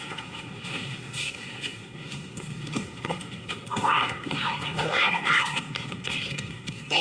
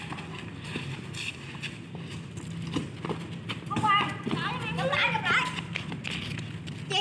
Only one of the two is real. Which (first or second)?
second